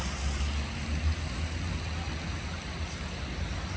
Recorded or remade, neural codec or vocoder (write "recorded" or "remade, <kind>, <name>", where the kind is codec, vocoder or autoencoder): recorded